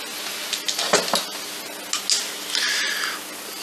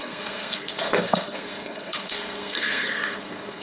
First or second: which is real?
first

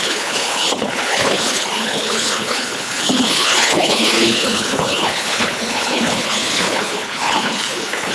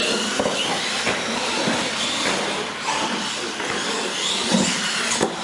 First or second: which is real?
second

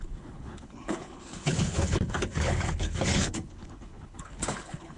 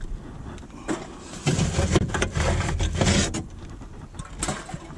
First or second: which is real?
second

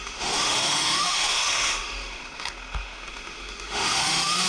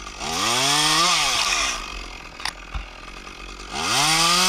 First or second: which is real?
second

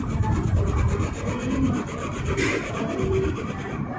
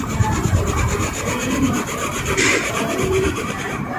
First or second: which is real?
first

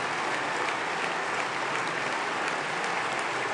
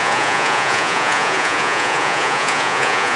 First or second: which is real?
first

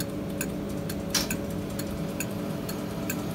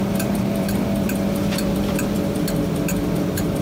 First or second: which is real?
first